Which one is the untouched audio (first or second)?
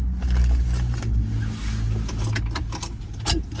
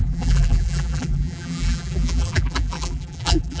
first